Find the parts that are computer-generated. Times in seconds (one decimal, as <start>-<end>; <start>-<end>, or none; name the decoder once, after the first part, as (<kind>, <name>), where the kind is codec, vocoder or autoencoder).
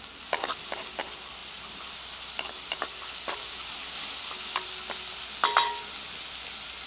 none